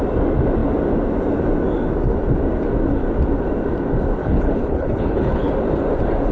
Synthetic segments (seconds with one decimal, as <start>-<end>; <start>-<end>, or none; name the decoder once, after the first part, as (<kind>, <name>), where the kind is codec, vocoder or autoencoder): 4.2-5.5 (codec, HILCodec)